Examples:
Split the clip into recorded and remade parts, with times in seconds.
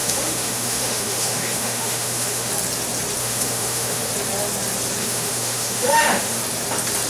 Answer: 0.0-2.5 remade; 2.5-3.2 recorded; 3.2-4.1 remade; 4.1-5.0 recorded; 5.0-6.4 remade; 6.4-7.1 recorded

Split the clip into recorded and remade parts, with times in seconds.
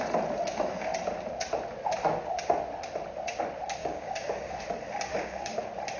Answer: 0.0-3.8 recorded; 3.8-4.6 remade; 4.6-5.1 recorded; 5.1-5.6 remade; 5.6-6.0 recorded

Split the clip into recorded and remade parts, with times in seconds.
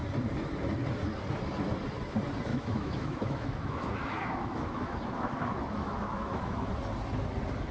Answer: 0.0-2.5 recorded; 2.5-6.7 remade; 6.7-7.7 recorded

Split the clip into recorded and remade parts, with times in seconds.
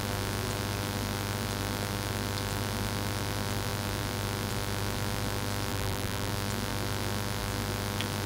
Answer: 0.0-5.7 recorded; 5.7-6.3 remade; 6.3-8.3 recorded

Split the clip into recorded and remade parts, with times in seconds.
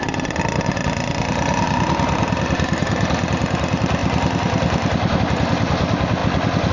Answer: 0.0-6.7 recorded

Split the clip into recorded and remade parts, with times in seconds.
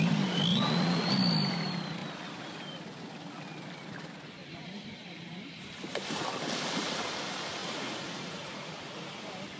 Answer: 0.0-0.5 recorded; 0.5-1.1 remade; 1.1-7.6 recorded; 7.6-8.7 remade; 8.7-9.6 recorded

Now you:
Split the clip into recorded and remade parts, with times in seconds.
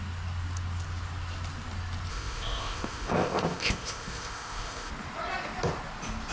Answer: 0.0-2.1 recorded; 2.1-4.9 remade; 4.9-6.3 recorded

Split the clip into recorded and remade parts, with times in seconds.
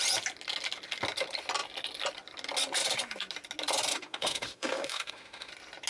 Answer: 0.0-3.9 recorded; 3.9-5.5 remade; 5.5-5.9 recorded